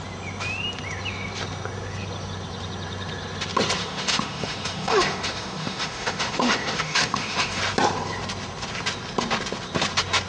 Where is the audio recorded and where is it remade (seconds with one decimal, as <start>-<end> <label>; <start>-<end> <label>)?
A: 0.0-3.8 recorded; 3.8-7.6 remade; 7.6-10.3 recorded